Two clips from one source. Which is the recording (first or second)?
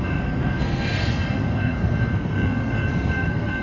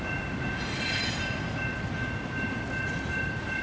second